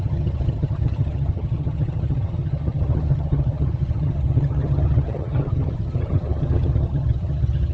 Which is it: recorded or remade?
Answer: remade